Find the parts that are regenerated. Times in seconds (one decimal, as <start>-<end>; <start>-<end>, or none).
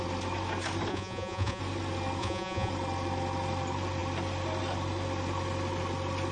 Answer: 0.9-1.6; 2.2-2.7